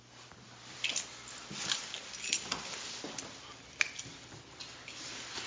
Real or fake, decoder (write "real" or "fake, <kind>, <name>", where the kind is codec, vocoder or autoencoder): real